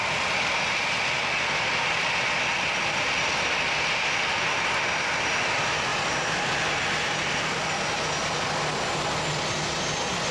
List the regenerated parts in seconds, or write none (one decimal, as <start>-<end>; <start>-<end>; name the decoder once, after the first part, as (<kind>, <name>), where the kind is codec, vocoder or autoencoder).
none